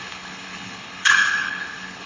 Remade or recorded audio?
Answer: remade